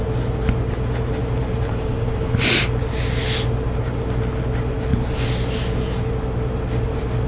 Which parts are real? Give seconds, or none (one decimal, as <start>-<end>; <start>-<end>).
0.0-1.2; 2.6-7.3